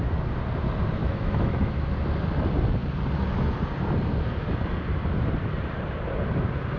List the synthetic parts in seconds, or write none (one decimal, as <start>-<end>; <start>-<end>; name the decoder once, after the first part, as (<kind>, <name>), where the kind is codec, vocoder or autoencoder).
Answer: 1.0-1.9 (autoencoder, DAC-VAE)